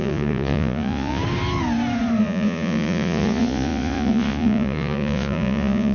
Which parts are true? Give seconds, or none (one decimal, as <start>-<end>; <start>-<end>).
1.2-2.2